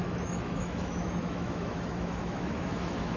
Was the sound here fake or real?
fake